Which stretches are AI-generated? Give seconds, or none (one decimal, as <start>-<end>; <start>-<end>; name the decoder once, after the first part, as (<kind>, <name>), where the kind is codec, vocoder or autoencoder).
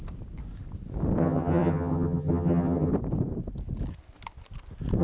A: 1.2-2.9 (vocoder, HiFi-GAN)